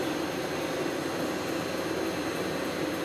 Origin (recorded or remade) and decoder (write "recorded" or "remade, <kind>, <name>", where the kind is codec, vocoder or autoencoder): recorded